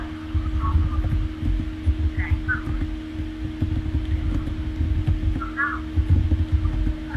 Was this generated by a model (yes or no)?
no